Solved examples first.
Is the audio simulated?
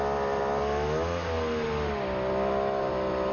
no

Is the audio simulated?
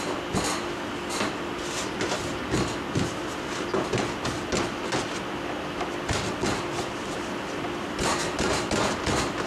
no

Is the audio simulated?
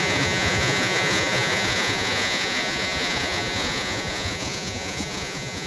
yes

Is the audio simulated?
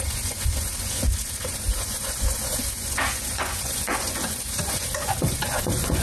yes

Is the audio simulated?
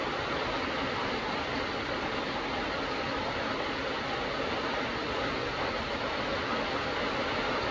no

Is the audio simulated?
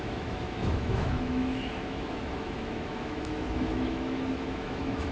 yes